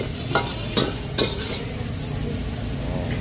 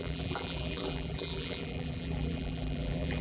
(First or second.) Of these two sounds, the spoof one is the second